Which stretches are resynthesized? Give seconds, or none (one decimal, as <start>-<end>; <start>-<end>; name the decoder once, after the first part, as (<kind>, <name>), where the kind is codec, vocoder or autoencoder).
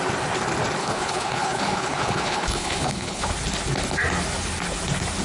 0.8-3.3 (codec, HILCodec)